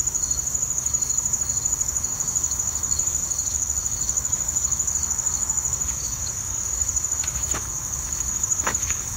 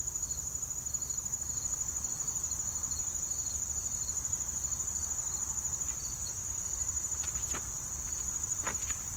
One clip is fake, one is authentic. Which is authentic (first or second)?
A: second